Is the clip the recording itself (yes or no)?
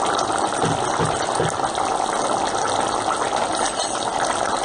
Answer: yes